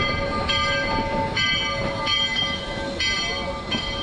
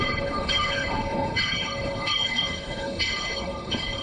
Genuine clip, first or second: first